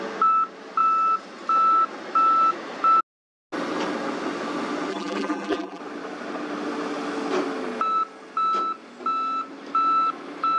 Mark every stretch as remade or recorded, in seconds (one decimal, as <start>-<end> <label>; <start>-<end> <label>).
0.0-4.9 recorded; 4.9-5.8 remade; 5.8-10.6 recorded